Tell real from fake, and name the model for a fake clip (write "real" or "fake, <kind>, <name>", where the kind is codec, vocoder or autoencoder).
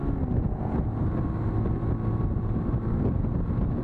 real